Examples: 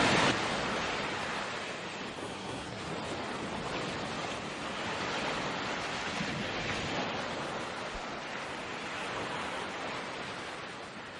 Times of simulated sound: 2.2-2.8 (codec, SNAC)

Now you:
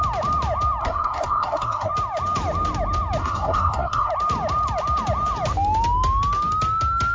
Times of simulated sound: 0.8-1.9 (codec, SNAC); 3.2-4.1

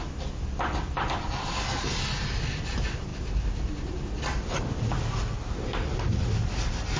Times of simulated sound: none

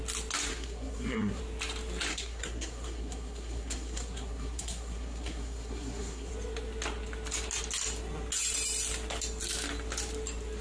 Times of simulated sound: 0.5-1.4 (codec, SNAC); 2.1-6.3

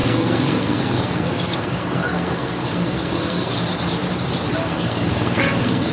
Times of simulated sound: 0.0-3.5 (codec, SNAC); 4.6-5.9

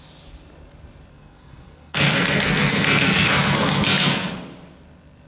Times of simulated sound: 1.1-4.3 (codec, SNAC)

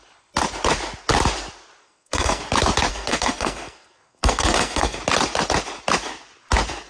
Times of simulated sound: 1.8-2.4 (codec, SNAC); 2.9-5.0

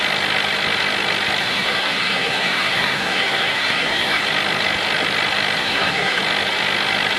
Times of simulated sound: 1.4-4.2 (codec, SNAC); 5.6-6.2